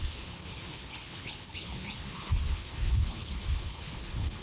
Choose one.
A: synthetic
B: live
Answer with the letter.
A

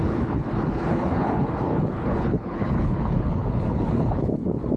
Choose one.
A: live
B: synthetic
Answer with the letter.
B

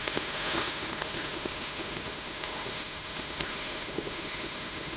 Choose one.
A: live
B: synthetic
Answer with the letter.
B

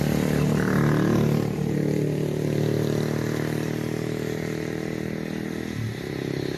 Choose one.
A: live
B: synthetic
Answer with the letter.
A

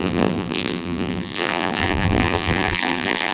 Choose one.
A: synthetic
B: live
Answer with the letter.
A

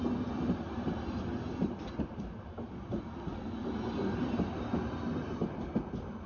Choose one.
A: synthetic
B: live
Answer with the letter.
B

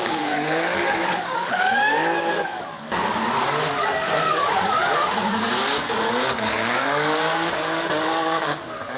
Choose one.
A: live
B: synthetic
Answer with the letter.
B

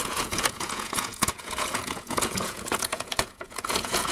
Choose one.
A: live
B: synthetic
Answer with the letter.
B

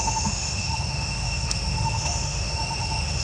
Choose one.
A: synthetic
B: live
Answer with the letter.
A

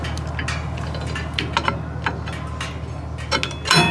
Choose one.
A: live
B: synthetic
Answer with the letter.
A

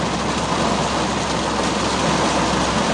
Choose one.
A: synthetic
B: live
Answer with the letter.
B